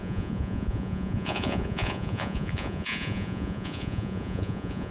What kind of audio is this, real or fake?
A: fake